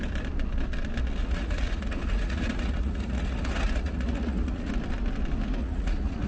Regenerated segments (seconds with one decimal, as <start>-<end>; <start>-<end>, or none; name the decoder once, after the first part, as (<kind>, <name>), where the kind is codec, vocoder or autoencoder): 1.2-4.7 (vocoder, Vocos); 5.6-6.3